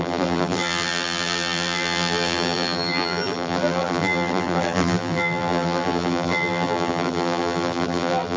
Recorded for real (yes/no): no